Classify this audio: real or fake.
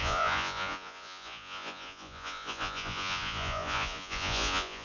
fake